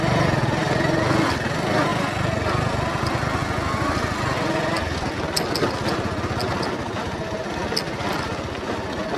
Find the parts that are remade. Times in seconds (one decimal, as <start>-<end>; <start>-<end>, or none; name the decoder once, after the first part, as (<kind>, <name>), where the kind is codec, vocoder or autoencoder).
none